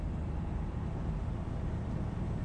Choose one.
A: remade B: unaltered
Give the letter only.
B